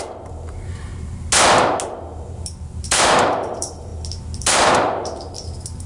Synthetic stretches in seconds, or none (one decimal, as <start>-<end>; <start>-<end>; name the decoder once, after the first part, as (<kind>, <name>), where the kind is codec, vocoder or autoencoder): 0.0-0.9 (vocoder, BigVGAN v2); 2.4-3.9; 4.4-5.9